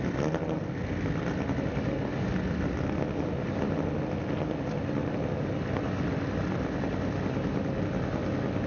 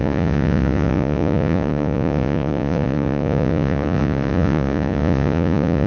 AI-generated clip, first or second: second